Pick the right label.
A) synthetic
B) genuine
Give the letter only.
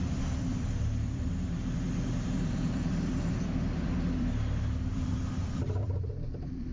A